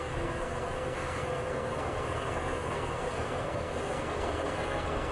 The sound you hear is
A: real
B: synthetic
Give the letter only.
B